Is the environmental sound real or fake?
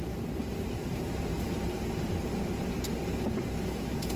fake